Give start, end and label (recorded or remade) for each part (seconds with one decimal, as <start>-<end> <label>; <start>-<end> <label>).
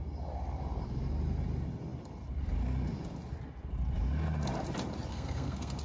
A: 0.0-5.1 recorded; 5.1-5.8 remade